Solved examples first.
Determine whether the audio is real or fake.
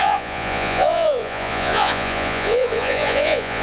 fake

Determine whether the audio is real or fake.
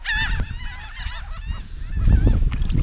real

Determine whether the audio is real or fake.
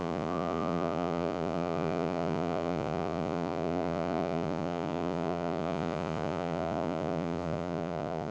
fake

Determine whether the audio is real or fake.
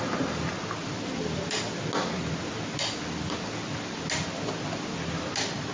real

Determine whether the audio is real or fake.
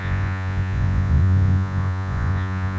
fake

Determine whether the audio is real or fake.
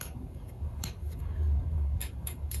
fake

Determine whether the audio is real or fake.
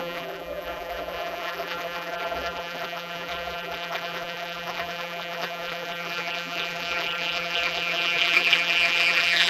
fake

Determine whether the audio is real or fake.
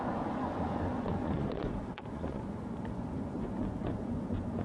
fake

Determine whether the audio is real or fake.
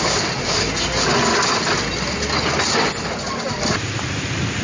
real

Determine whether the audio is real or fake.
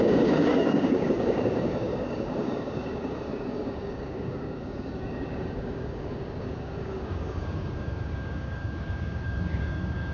fake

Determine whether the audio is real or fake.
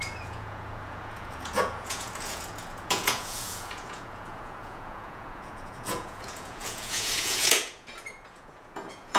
fake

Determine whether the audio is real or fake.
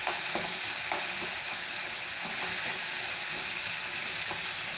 real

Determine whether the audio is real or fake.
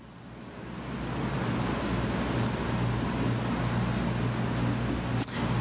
real